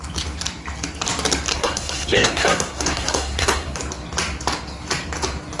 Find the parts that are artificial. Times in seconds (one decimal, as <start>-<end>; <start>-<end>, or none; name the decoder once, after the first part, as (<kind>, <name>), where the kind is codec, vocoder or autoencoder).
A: 1.5-3.8 (codec, SNAC)